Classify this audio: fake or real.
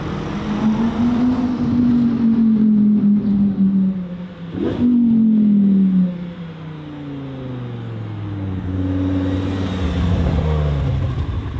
real